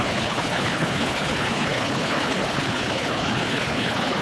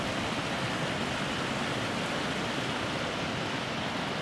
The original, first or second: second